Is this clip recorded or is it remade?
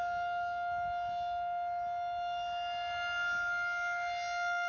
recorded